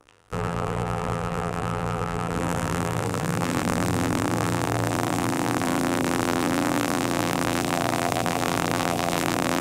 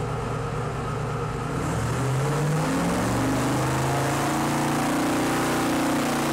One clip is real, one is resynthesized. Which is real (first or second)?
second